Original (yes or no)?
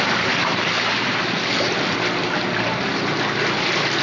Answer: yes